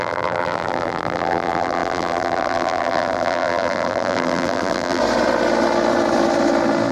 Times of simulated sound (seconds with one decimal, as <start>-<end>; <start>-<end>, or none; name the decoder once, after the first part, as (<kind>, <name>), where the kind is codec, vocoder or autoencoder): 0.0-5.0 (vocoder, BigVGAN v2)